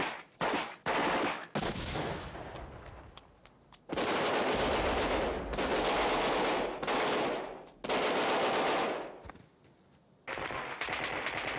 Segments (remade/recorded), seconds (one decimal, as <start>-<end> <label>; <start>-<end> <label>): 0.0-1.6 recorded; 1.6-2.3 remade; 2.3-11.6 recorded